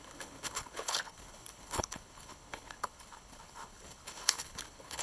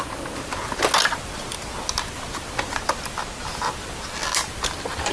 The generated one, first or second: first